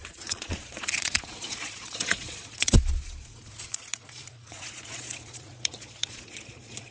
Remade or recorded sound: remade